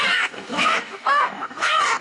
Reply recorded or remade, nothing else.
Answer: remade